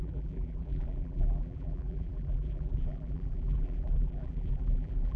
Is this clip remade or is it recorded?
remade